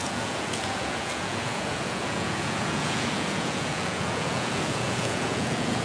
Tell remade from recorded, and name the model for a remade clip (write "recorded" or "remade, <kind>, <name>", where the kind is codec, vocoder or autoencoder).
remade, vocoder, Vocos